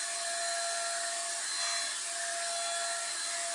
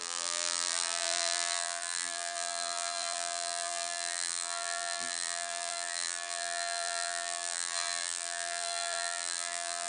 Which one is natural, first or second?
first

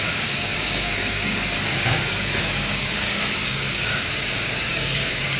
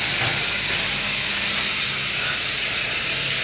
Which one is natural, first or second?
second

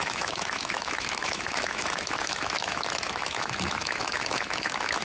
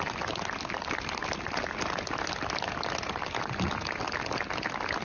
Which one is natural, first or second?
second